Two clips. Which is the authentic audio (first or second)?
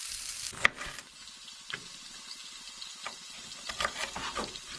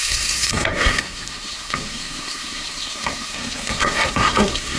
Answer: first